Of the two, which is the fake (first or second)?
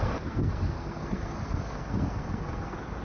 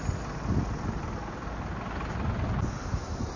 first